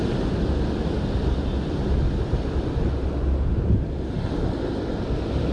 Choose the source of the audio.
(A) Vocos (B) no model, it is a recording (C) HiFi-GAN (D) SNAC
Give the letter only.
B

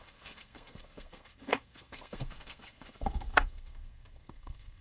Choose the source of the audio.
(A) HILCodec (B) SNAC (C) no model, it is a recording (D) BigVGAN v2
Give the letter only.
B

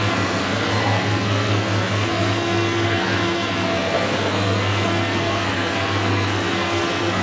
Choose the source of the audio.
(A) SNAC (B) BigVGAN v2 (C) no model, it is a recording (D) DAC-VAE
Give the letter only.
A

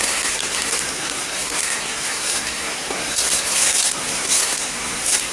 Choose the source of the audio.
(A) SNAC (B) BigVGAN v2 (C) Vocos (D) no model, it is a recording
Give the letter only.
A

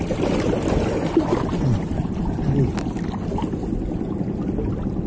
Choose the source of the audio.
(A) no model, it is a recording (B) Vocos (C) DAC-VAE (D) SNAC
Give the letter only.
A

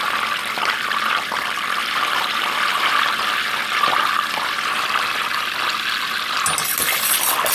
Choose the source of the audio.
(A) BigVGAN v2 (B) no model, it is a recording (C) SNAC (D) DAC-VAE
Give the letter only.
B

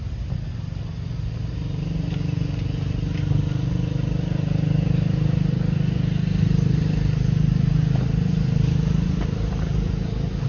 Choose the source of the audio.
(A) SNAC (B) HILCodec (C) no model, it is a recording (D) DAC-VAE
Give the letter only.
C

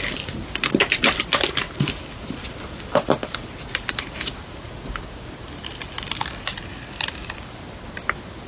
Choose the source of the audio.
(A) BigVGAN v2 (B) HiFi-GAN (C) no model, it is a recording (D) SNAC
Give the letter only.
C